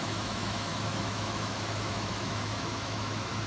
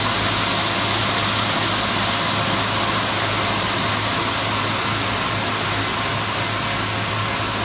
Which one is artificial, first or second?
first